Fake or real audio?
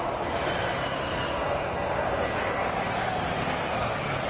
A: real